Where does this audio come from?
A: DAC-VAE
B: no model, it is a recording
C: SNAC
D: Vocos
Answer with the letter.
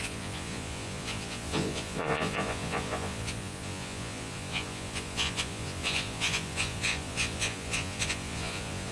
D